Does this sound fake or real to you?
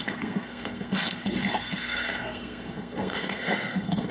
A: fake